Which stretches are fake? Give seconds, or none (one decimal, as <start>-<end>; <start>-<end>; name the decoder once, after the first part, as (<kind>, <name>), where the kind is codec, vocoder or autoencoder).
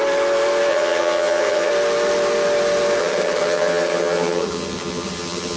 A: 0.7-1.7 (vocoder, HiFi-GAN); 3.0-5.6